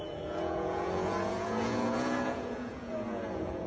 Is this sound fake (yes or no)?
yes